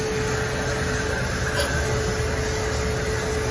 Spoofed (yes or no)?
no